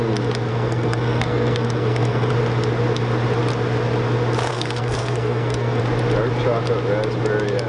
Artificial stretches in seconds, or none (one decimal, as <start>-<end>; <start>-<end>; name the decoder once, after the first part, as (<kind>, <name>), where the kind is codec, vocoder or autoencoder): 0.5-2.3 (codec, SNAC); 4.5-5.8